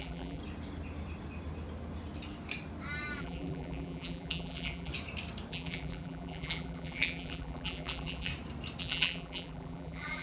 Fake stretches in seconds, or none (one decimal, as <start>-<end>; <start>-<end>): 0.0-0.4; 3.2-4.9; 5.5-8.3; 8.8-10.2

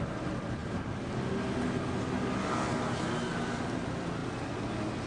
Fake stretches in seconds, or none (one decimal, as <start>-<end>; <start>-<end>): none

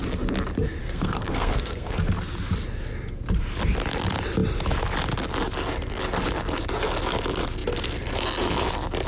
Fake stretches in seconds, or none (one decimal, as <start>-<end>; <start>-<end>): 0.8-2.0

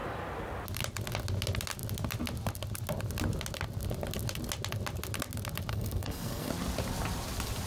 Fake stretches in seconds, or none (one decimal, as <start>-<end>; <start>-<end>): 5.7-6.5

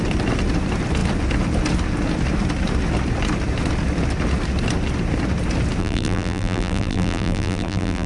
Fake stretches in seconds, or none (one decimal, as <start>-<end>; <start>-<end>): 5.8-8.1

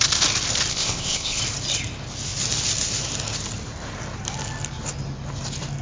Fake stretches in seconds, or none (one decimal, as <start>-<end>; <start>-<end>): 0.7-1.4